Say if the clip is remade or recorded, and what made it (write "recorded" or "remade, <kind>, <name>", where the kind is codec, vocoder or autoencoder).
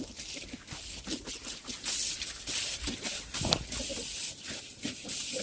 recorded